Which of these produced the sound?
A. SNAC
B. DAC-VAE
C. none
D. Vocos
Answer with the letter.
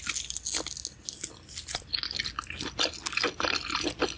C